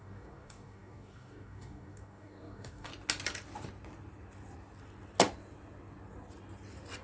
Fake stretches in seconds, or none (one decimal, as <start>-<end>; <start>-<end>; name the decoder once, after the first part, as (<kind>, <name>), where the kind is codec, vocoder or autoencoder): 0.0-2.9 (codec, DAC)